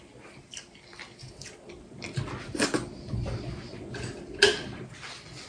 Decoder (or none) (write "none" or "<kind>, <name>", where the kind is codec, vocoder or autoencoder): none